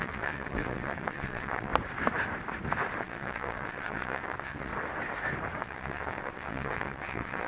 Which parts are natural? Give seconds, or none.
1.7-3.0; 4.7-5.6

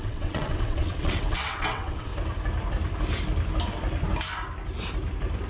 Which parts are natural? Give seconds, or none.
2.1-5.5

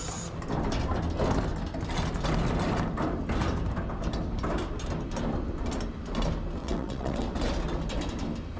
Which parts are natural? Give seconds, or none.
0.0-6.6; 7.3-8.6

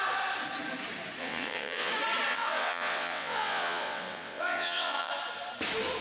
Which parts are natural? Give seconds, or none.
0.0-1.2; 1.9-2.3; 5.1-6.0